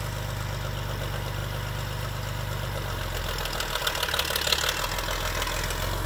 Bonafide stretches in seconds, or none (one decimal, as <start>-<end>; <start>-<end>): 0.0-6.1